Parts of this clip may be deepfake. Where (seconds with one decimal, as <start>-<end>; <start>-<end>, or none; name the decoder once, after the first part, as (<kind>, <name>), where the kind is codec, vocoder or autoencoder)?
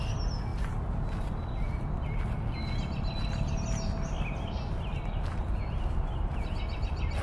none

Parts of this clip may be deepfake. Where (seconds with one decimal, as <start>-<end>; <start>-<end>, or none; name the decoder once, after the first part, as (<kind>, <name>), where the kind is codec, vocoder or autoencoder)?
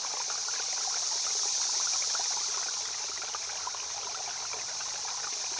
none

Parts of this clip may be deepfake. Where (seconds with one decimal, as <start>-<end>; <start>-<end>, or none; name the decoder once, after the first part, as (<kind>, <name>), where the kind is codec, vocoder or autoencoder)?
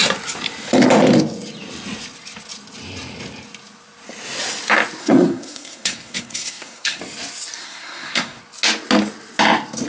5.0-7.0 (codec, SNAC); 7.6-8.4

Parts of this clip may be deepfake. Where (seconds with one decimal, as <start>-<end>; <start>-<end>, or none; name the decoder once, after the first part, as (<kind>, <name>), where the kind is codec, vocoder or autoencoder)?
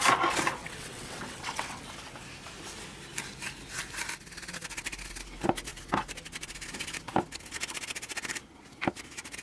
0.6-1.8 (vocoder, WaveNeXt)